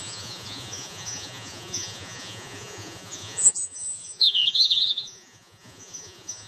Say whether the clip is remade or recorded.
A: remade